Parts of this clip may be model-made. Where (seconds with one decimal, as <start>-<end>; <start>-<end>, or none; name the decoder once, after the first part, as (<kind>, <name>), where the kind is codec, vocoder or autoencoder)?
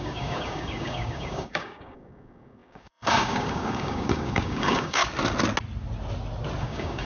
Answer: 0.0-5.0 (codec, DAC); 6.6-7.0